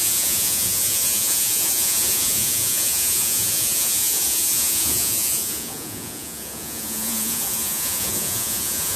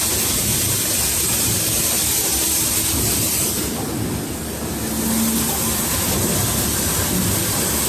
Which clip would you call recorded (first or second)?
second